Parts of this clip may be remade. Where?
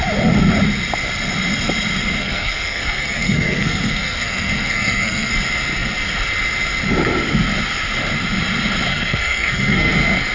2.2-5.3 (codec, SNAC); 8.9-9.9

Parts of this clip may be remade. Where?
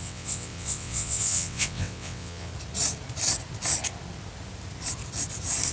0.0-2.5 (vocoder, WaveNeXt)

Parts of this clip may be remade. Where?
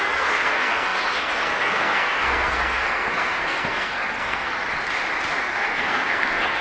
0.0-4.6 (codec, SNAC); 5.4-6.6